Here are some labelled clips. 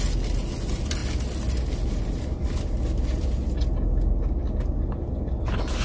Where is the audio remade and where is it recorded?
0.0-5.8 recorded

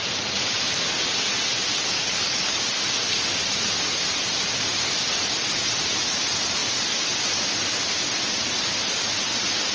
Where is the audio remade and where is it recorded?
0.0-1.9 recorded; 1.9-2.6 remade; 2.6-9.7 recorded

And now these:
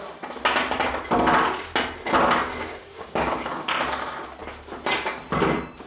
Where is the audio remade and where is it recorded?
0.0-2.5 recorded; 2.5-3.7 remade; 3.7-5.9 recorded

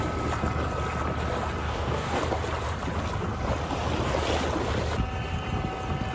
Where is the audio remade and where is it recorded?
0.0-1.6 recorded; 1.6-2.2 remade; 2.2-6.1 recorded